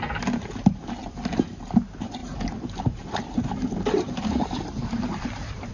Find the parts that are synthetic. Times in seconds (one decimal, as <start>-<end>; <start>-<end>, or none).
2.2-5.7